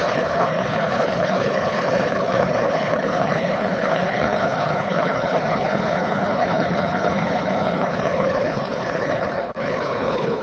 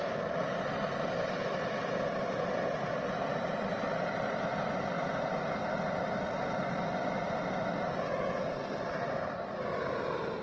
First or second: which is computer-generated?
first